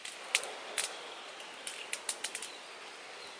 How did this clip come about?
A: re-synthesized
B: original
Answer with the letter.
B